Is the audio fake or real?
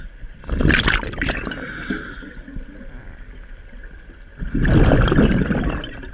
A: real